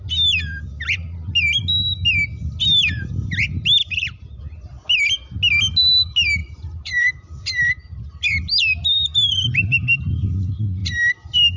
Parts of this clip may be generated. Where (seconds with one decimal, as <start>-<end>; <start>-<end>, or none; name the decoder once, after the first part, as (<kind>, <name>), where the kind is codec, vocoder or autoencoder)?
3.8-4.4 (vocoder, BigVGAN v2); 6.4-7.1